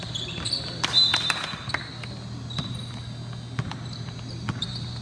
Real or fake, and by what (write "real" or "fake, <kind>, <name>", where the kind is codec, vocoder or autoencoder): real